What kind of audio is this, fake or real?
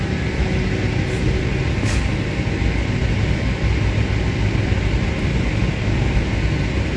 real